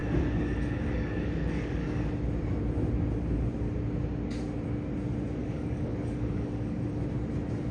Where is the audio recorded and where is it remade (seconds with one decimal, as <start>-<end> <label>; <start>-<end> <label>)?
0.0-2.1 remade; 2.1-5.4 recorded; 5.4-7.0 remade; 7.0-7.7 recorded